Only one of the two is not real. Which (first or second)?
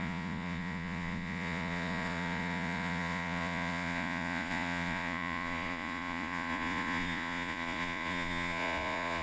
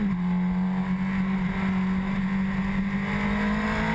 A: first